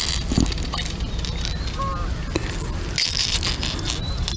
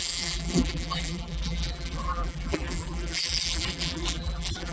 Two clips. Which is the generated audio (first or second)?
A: second